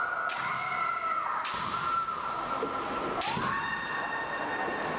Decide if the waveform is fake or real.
real